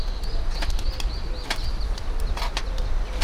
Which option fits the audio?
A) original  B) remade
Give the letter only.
A